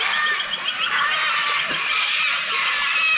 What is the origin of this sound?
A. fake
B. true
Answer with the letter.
B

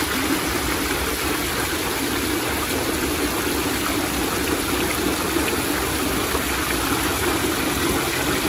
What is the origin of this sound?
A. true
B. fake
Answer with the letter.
A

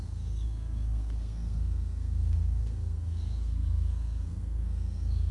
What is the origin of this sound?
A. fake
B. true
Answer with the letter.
A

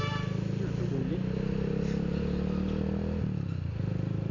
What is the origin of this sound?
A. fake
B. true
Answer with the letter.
B